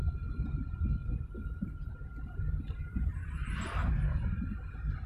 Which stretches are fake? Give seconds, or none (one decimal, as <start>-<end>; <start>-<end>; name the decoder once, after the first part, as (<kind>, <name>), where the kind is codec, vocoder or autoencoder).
0.0-5.1 (vocoder, BigVGAN v2)

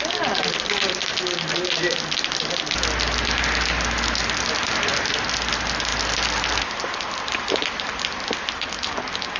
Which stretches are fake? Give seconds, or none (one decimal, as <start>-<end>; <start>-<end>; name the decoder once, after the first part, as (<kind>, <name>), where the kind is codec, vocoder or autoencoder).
none

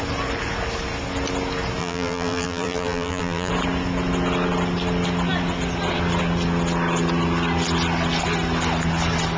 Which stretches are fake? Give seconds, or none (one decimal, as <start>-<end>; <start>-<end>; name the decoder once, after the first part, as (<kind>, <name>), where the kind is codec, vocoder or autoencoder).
1.8-3.5 (vocoder, BigVGAN v2)

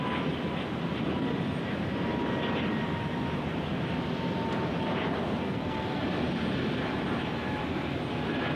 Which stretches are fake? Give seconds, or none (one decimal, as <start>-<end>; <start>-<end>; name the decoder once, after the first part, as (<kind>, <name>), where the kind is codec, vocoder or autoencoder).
5.4-6.0 (codec, SNAC)

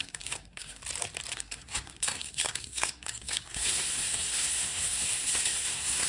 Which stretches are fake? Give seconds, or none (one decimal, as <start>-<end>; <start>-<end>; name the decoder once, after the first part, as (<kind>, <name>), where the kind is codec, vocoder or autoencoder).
0.0-0.8 (codec, SNAC); 1.3-6.1

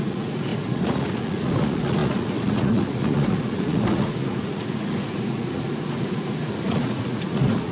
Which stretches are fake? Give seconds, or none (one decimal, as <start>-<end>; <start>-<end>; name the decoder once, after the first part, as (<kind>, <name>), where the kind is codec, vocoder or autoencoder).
0.0-7.7 (vocoder, Vocos)